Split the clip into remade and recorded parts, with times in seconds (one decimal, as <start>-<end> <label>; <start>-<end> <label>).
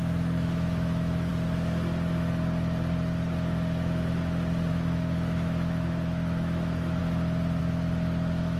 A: 0.0-1.3 remade; 1.3-4.7 recorded; 4.7-7.0 remade; 7.0-7.6 recorded; 7.6-8.6 remade